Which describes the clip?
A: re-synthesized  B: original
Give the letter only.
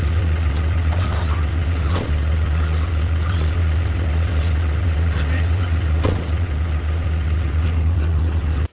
A